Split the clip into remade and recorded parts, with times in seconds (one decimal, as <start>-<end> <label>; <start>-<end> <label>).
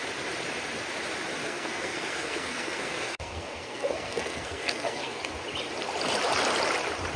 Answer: 0.0-1.4 recorded; 1.4-5.2 remade; 5.2-7.2 recorded